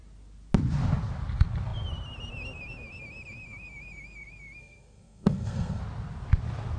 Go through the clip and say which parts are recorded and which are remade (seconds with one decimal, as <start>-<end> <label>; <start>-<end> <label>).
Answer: 0.0-4.6 recorded; 4.6-5.8 remade; 5.8-6.8 recorded